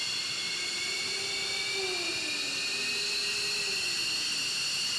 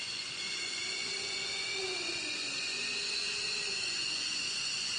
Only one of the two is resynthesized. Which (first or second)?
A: second